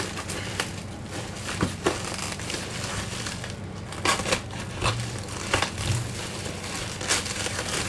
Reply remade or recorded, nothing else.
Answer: recorded